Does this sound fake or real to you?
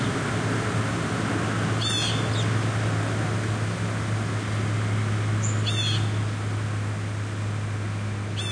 real